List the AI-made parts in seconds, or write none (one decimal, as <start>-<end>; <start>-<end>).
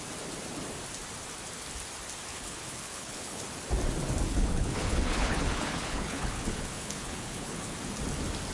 2.3-3.4; 4.3-7.8